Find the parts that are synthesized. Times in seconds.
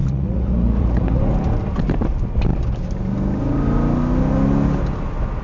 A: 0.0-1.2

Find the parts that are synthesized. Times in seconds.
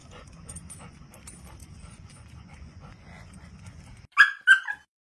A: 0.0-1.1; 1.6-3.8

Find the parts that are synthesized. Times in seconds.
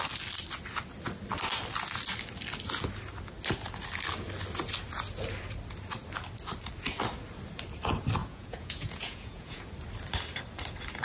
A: 8.2-9.7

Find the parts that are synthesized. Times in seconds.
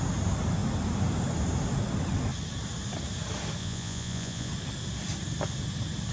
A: 3.6-4.5